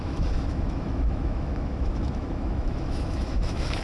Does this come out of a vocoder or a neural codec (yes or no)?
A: yes